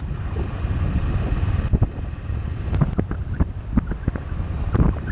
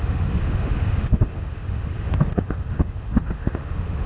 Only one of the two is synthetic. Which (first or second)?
second